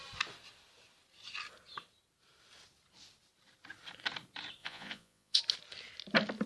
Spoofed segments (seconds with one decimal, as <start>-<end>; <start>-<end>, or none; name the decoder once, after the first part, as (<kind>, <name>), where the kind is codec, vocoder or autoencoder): 4.6-5.4 (vocoder, Vocos)